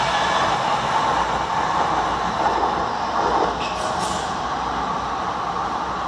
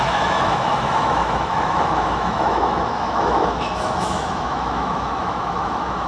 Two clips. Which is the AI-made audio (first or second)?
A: second